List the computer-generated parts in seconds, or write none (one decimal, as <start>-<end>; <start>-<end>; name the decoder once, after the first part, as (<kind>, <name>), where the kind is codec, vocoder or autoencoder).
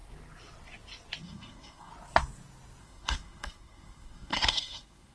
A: 1.2-1.9 (codec, SNAC); 2.8-5.1